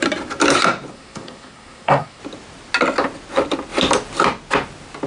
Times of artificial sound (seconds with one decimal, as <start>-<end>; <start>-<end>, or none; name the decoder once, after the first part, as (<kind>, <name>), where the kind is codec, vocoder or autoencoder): 0.9-2.2 (codec, SNAC)